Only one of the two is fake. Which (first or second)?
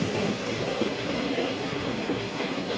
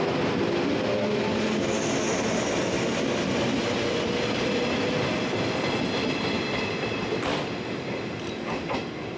first